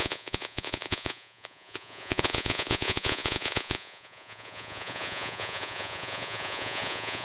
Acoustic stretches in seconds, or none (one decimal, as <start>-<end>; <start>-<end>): none